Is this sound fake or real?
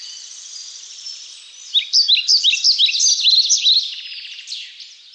real